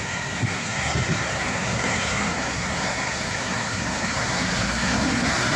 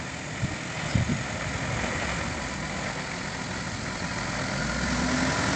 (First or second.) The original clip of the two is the second